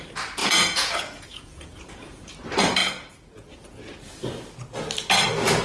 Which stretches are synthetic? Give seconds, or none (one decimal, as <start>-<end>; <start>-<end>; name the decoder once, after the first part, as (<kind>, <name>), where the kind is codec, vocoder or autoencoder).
0.4-2.3 (vocoder, Vocos)